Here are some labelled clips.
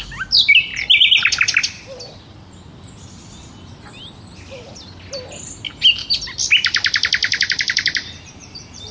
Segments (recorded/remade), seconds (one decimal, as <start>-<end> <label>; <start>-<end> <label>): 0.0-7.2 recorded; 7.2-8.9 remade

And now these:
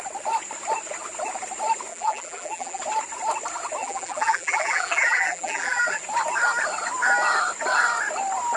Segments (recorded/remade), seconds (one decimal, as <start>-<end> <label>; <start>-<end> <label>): 0.0-1.9 recorded; 1.9-2.8 remade; 2.8-3.8 recorded; 3.8-6.0 remade; 6.0-8.6 recorded

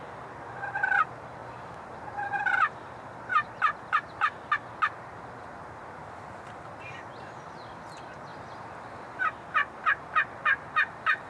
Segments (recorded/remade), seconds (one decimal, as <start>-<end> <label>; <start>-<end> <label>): 0.0-11.3 recorded

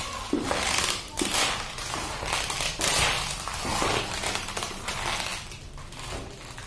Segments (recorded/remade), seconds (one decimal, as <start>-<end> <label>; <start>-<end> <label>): 0.0-6.7 recorded